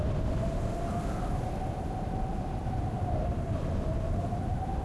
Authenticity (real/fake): real